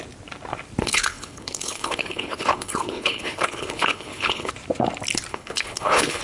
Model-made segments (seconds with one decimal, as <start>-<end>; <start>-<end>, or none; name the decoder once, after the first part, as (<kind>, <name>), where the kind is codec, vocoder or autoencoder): 0.8-4.5 (codec, HILCodec); 5.3-6.2